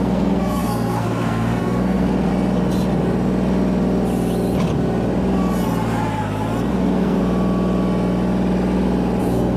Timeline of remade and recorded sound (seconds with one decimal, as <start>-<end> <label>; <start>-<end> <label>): 0.0-2.3 remade; 2.3-6.7 recorded; 6.7-7.2 remade; 7.2-9.2 recorded; 9.2-9.6 remade